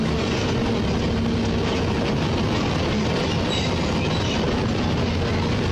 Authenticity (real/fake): real